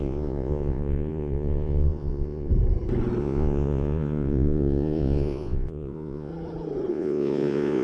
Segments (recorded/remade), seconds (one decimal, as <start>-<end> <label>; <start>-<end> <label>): 0.0-2.5 remade; 2.5-3.2 recorded; 3.2-6.3 remade; 6.3-6.9 recorded; 6.9-7.8 remade